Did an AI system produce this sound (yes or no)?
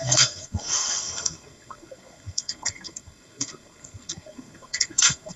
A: yes